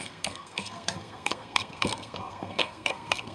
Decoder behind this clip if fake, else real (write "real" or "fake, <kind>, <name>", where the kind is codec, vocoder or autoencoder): fake, codec, SNAC